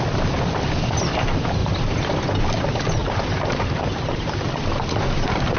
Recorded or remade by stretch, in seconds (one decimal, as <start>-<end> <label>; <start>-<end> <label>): 0.0-1.6 recorded; 1.6-2.1 remade; 2.1-3.0 recorded; 3.0-4.5 remade; 4.5-5.6 recorded